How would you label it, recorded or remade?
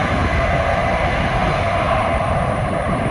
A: recorded